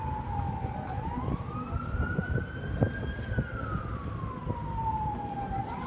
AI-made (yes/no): no